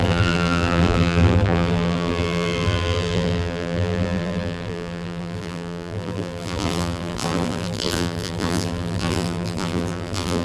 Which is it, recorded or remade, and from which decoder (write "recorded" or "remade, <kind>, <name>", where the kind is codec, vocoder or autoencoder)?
remade, vocoder, BigVGAN v2